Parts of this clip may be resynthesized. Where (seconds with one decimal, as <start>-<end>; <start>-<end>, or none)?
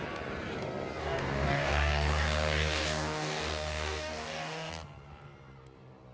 1.0-4.7